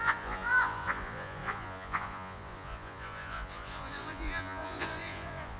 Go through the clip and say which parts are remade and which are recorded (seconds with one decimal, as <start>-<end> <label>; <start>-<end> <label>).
0.0-5.6 remade